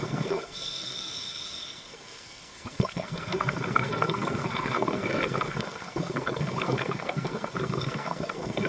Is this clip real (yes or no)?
no